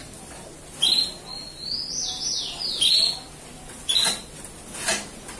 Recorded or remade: recorded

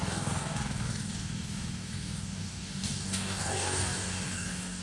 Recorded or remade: remade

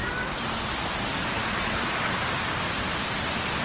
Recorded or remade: recorded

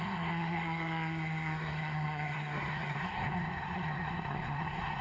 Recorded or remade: remade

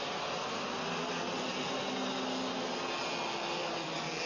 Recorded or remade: recorded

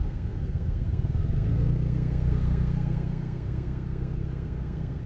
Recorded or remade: remade